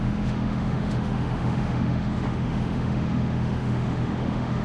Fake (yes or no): yes